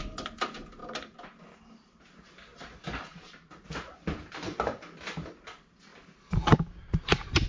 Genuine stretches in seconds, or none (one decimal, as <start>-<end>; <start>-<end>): 0.0-0.8; 1.4-2.5; 3.3-7.5